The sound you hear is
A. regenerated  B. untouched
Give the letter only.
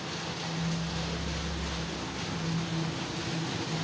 B